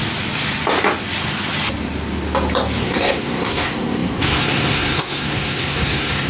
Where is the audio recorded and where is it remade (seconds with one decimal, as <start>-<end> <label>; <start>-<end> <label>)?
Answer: 0.0-2.8 recorded; 2.8-6.3 remade